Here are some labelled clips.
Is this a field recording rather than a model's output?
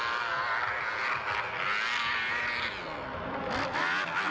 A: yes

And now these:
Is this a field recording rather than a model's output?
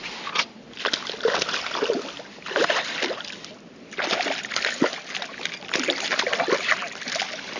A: yes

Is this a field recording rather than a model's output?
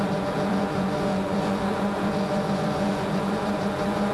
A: no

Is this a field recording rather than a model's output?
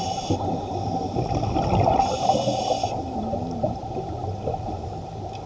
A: yes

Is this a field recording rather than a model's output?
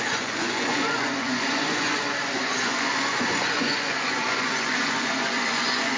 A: no